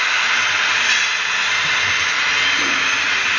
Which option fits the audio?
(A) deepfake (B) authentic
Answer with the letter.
B